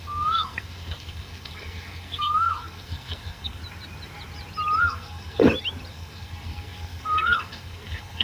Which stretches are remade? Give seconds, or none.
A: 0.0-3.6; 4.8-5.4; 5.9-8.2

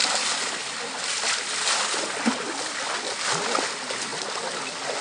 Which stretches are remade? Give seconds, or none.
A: none

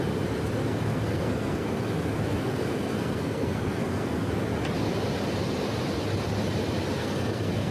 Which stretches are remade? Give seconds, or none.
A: 0.6-4.3; 7.0-7.7

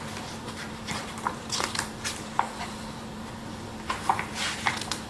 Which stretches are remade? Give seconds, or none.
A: none

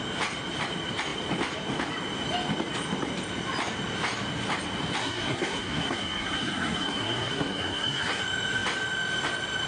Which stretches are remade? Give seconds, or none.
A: 5.0-8.2